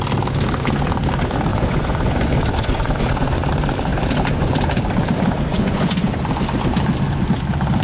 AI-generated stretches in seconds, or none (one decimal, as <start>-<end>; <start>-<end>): 1.5-3.5; 5.5-6.2